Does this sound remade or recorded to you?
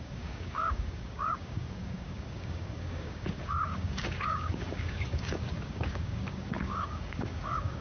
remade